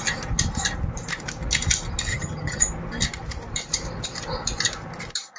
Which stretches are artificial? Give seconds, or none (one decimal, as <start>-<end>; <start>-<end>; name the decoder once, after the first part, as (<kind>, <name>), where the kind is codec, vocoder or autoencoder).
2.1-2.6 (vocoder, HiFi-GAN)